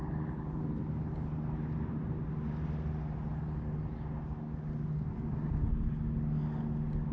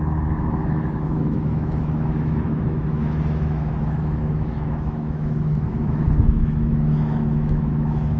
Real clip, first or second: first